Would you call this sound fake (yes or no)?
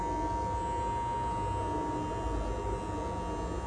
no